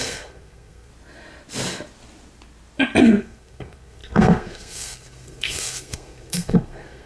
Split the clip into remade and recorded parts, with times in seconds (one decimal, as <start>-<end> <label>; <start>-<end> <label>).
0.0-0.9 remade; 0.9-3.0 recorded; 3.0-7.1 remade